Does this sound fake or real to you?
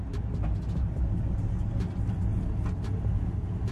real